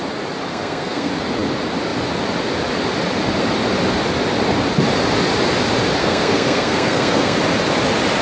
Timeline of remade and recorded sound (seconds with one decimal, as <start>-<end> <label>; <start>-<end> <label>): 0.0-0.5 recorded; 0.5-1.1 remade; 1.1-6.0 recorded; 6.0-7.4 remade; 7.4-8.2 recorded